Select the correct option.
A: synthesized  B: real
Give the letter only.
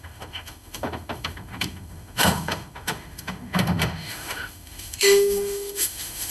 A